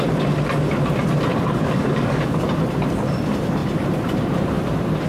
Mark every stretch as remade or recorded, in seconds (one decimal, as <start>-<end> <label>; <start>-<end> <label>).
0.0-1.3 recorded; 1.3-2.4 remade; 2.4-5.1 recorded

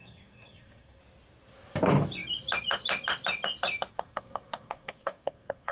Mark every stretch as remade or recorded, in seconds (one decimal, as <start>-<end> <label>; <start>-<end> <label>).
0.0-1.0 remade; 1.0-3.9 recorded; 3.9-5.7 remade

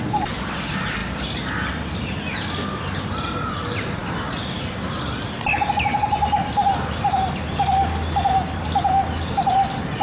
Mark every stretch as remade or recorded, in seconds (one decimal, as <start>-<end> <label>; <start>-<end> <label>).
0.0-10.0 recorded

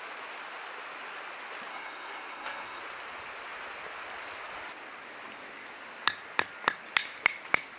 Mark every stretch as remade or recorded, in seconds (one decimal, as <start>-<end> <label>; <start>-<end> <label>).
0.0-1.7 recorded; 1.7-2.8 remade; 2.8-7.8 recorded

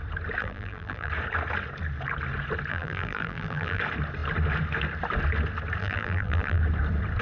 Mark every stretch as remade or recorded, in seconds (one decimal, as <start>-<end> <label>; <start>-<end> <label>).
0.0-0.4 recorded; 0.4-1.1 remade; 1.1-2.7 recorded; 2.7-3.8 remade; 3.8-5.8 recorded; 5.8-6.6 remade; 6.6-7.2 recorded